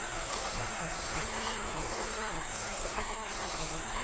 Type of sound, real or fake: fake